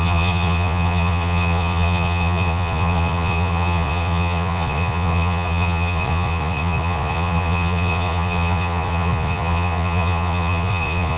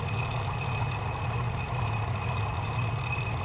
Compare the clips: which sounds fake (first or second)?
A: first